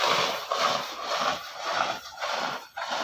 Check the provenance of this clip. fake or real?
fake